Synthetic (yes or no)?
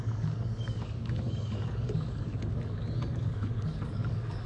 yes